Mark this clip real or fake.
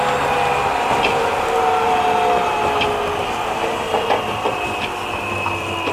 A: real